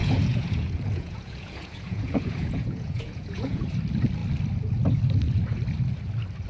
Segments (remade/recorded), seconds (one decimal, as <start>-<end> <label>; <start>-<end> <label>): 0.0-3.6 remade; 3.6-6.5 recorded

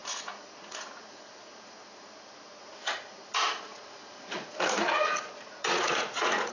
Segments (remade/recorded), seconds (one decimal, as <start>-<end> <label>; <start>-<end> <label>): 0.0-2.1 remade; 2.1-2.6 recorded; 2.6-6.5 remade